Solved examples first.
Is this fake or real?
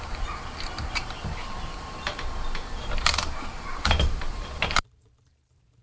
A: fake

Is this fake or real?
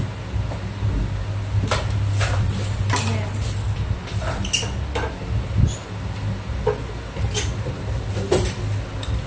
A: real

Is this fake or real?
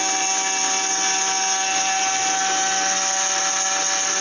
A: real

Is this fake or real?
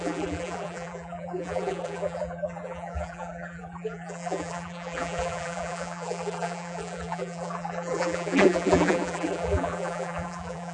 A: fake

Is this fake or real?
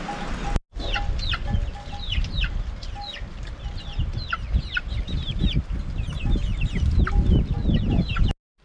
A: real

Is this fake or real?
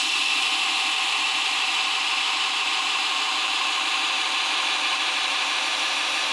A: fake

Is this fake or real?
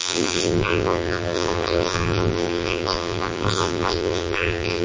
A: fake